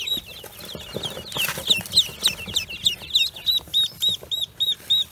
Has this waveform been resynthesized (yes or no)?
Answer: no